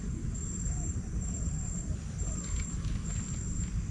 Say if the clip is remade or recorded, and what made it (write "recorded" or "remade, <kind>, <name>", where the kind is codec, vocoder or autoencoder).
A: recorded